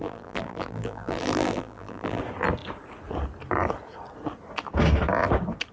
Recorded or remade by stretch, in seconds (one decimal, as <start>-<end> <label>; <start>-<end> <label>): 0.0-2.2 remade; 2.2-5.7 recorded